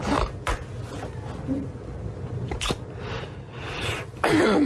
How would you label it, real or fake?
real